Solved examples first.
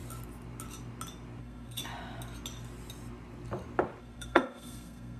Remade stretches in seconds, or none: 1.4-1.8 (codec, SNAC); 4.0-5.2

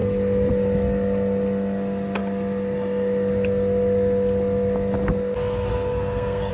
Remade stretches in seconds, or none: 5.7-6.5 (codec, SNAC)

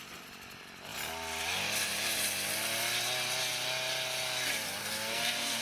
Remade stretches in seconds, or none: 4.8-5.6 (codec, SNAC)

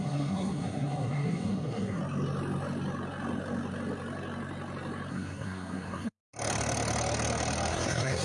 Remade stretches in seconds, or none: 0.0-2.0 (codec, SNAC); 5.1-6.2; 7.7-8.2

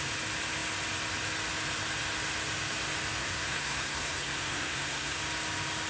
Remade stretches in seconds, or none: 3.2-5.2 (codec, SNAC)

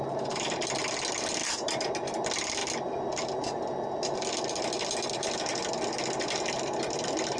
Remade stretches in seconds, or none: none

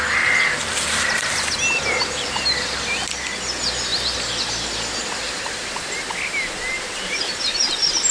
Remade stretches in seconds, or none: none

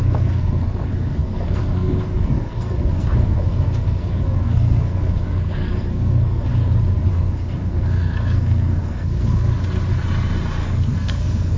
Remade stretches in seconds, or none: 0.0-6.5 (codec, SNAC); 7.1-9.5; 10.6-11.6